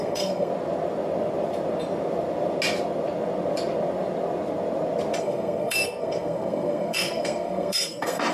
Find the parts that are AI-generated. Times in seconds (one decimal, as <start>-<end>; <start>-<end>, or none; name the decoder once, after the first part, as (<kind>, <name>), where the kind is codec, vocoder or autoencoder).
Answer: 0.0-0.5 (codec, SNAC); 5.2-8.3